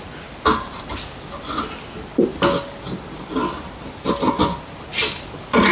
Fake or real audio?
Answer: real